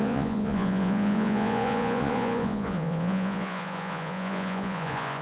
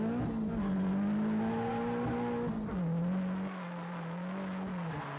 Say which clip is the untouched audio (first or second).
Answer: second